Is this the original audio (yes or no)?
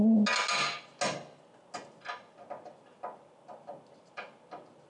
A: yes